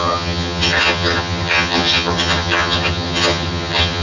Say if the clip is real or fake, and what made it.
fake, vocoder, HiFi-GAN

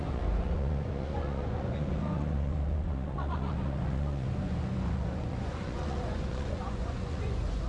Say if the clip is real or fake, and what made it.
fake, vocoder, Vocos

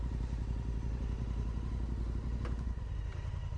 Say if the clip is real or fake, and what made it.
real